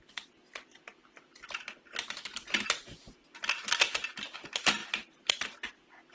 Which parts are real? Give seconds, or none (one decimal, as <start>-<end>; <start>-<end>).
0.0-4.8; 5.3-6.1